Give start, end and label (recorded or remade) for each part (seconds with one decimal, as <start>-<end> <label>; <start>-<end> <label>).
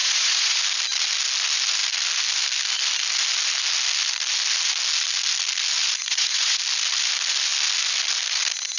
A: 0.0-0.6 remade; 0.6-6.0 recorded; 6.0-6.6 remade; 6.6-8.8 recorded